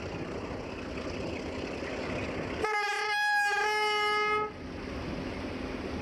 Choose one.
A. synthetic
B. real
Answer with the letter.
B